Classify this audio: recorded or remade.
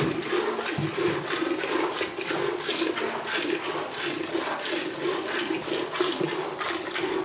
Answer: recorded